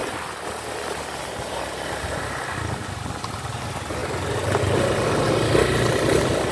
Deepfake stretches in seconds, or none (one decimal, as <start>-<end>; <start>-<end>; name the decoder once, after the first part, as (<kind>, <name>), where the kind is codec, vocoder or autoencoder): 0.0-1.9 (vocoder, BigVGAN v2)